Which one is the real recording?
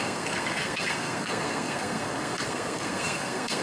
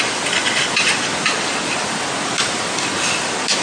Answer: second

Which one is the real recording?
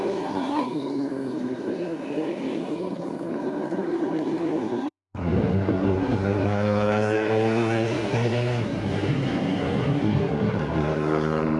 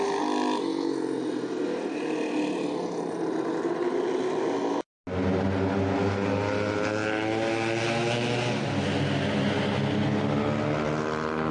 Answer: second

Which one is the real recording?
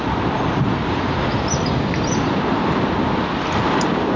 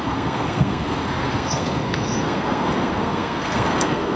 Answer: first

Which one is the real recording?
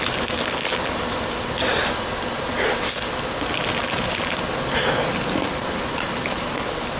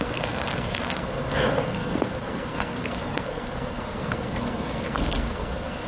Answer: first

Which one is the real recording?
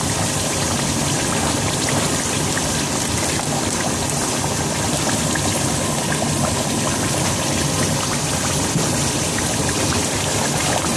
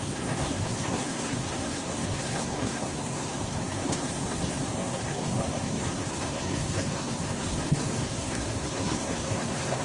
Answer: first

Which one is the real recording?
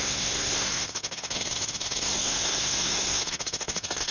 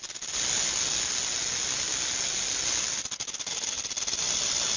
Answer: second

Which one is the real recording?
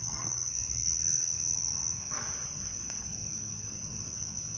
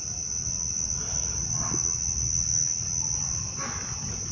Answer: second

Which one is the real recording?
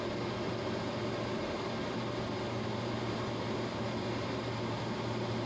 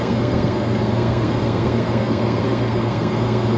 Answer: first